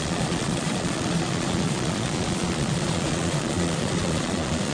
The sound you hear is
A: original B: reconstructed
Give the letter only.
B